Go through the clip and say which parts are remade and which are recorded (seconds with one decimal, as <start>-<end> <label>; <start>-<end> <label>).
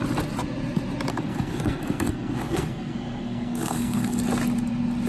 0.0-1.1 recorded; 1.1-4.2 remade; 4.2-5.1 recorded